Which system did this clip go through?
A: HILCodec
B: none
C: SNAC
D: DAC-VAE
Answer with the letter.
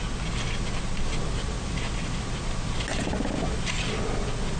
B